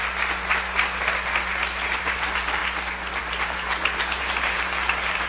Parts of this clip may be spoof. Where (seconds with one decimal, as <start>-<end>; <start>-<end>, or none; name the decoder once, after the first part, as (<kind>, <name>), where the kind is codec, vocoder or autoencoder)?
2.0-2.6 (vocoder, BigVGAN v2); 3.2-5.3